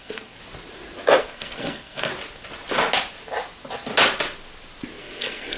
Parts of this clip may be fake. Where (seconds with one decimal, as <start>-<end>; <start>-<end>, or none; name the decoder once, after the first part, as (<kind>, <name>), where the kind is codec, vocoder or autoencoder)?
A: 0.0-0.4 (codec, SNAC); 1.2-2.1; 5.0-5.6